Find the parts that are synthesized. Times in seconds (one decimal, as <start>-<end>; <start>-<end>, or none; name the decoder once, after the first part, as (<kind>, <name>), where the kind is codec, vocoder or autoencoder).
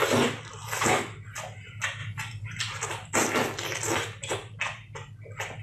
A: none